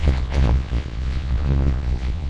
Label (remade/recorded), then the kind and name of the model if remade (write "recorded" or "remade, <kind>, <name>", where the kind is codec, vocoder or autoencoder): remade, vocoder, Vocos